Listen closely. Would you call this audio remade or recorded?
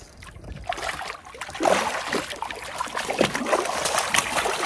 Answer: recorded